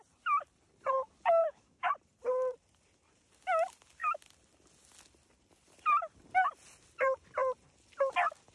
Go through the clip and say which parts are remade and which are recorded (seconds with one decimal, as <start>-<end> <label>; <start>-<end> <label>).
0.0-1.4 recorded; 1.4-1.9 remade; 1.9-8.5 recorded